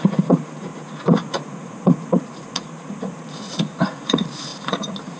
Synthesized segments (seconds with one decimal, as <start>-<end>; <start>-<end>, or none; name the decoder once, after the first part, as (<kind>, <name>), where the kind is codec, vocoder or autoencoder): 0.0-5.2 (vocoder, Vocos)